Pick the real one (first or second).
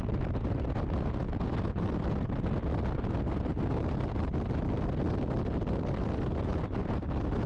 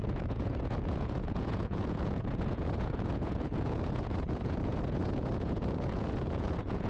first